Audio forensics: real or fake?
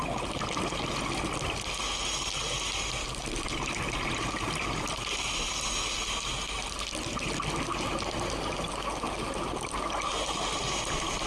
real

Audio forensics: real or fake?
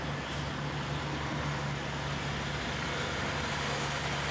real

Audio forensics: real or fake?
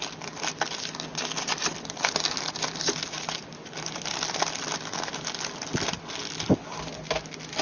real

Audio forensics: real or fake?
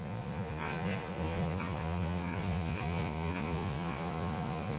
fake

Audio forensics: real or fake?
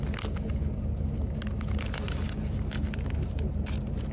real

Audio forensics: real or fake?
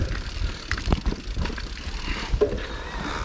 real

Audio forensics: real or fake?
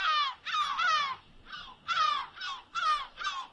real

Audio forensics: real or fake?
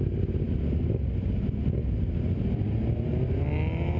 real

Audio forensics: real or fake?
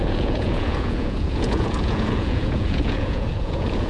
fake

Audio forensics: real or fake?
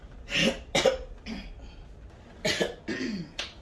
real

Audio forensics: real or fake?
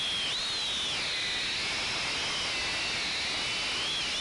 real